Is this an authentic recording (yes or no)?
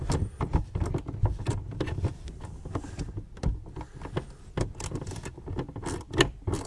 yes